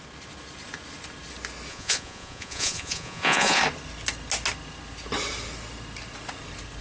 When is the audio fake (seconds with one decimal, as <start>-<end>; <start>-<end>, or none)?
1.7-3.6